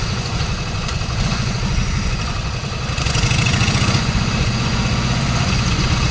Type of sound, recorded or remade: remade